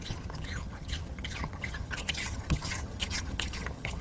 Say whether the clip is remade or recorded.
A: remade